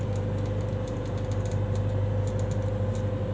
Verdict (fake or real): real